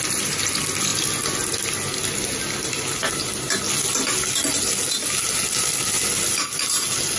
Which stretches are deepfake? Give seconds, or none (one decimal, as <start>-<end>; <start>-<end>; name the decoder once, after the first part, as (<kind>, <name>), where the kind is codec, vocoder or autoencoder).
none